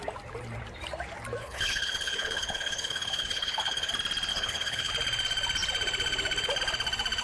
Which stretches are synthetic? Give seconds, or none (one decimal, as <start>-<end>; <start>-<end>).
1.4-3.9; 4.3-4.9